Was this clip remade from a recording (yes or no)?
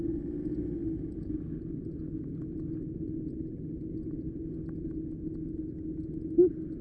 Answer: no